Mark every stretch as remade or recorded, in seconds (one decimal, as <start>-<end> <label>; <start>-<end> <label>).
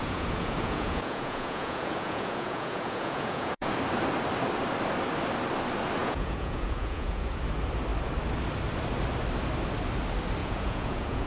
0.0-3.7 remade; 3.7-6.0 recorded; 6.0-7.4 remade; 7.4-10.4 recorded; 10.4-11.3 remade